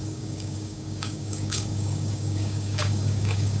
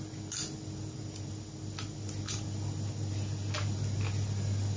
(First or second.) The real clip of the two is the second